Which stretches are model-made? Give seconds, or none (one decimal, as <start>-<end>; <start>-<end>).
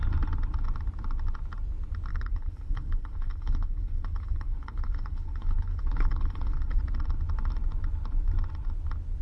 2.1-6.8